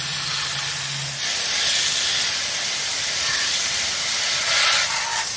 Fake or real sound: real